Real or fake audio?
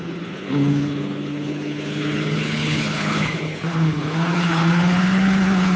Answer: fake